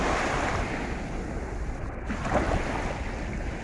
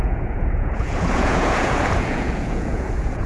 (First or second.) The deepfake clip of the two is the second